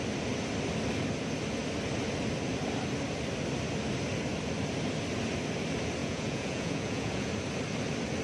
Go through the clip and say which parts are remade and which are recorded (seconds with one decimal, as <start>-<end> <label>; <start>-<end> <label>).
0.0-6.0 recorded; 6.0-7.3 remade; 7.3-8.2 recorded